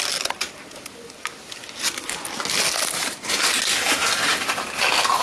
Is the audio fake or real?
real